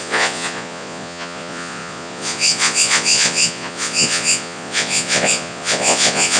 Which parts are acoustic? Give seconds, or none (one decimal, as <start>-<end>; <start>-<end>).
none